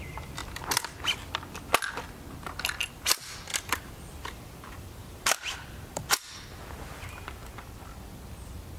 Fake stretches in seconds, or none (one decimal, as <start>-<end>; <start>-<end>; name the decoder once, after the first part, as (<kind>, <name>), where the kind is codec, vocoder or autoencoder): 0.0-0.4 (vocoder, BigVGAN v2); 2.9-7.4